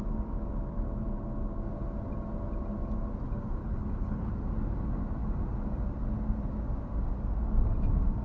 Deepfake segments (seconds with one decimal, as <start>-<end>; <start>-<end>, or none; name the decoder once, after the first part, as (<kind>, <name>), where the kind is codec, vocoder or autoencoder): 3.6-4.3 (codec, HILCodec)